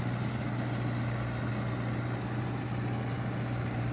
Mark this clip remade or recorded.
recorded